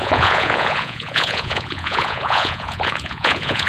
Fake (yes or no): yes